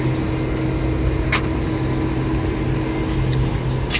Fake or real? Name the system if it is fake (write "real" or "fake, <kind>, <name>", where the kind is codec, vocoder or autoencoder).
real